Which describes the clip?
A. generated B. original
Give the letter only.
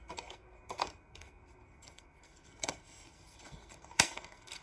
A